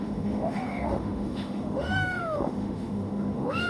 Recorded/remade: remade